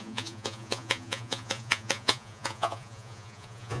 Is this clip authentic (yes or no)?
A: no